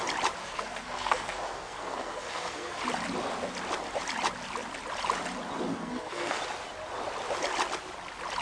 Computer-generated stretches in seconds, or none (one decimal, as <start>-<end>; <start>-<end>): 0.4-2.8; 5.7-6.4